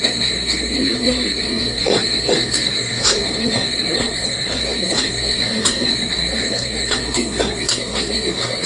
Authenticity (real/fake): fake